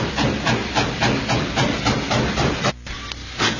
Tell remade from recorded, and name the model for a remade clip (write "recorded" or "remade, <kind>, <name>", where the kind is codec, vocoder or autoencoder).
recorded